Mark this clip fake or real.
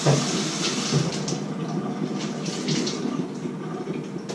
real